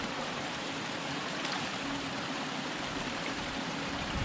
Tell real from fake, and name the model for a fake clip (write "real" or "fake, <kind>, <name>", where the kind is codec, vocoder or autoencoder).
fake, vocoder, BigVGAN v2